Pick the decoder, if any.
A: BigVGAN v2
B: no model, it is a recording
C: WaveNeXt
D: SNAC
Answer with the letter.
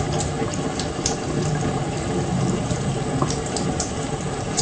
A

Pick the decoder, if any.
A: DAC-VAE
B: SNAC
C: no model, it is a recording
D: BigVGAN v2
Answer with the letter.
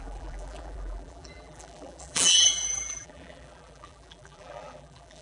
D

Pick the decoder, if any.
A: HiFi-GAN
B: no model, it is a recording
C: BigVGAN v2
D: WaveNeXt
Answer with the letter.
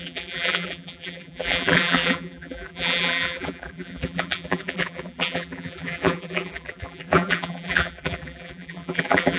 C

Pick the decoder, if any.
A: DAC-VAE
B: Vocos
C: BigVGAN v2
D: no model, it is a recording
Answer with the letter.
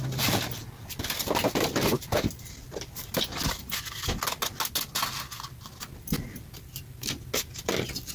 D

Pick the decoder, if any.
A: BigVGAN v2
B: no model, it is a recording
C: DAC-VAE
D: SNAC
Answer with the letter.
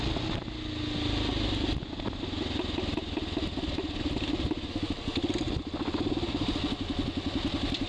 B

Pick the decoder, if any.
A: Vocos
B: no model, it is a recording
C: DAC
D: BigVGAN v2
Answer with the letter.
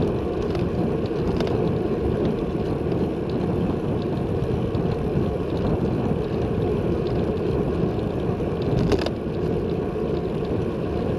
B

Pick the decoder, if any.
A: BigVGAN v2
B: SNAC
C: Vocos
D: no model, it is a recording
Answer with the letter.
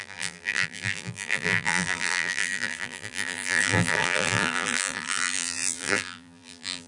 A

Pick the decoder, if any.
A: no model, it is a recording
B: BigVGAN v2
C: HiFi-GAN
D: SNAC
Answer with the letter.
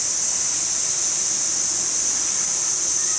A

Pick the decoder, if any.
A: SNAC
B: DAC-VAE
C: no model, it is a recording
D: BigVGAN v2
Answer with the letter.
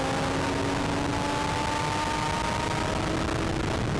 C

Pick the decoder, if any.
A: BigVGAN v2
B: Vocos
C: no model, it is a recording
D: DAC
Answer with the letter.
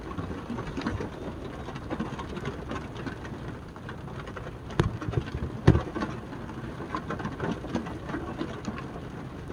C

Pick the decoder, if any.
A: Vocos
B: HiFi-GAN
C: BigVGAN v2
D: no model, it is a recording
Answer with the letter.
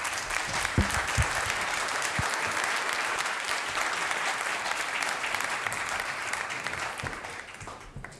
C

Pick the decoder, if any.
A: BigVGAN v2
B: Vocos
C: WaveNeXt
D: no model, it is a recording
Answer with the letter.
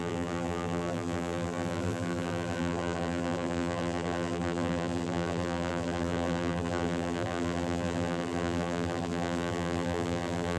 A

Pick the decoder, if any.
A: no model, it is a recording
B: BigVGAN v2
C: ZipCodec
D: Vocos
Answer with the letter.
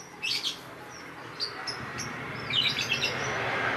A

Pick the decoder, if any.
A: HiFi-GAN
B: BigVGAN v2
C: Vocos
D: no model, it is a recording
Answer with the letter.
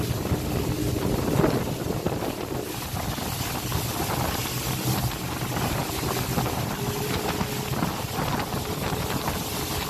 D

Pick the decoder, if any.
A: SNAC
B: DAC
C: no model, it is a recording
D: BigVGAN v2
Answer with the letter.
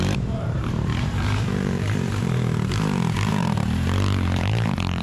D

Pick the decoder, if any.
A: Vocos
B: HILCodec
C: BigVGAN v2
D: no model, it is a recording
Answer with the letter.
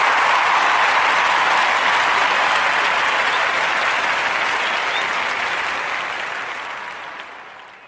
D